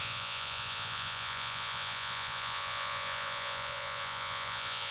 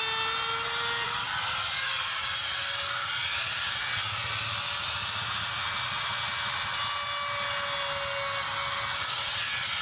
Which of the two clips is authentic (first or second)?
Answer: second